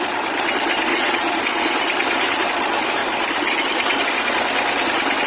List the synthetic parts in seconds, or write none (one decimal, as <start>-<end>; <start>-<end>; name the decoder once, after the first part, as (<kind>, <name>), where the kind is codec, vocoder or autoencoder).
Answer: 0.9-1.4 (vocoder, Vocos)